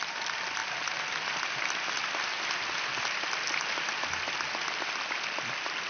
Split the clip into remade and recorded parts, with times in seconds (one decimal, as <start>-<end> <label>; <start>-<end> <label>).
0.0-5.9 recorded